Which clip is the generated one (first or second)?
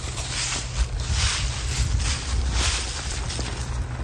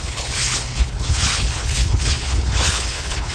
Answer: second